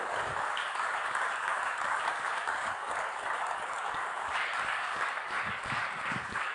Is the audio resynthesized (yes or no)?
yes